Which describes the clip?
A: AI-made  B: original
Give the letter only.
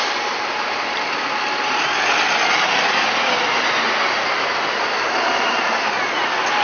B